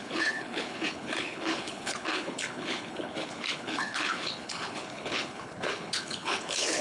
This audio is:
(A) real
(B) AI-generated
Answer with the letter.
B